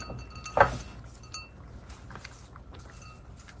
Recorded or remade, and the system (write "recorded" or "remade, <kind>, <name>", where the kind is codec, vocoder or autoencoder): recorded